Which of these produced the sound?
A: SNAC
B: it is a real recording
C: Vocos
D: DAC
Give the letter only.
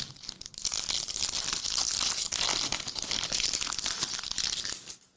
B